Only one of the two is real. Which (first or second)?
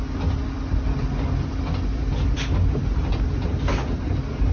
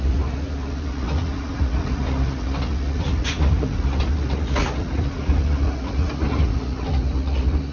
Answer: first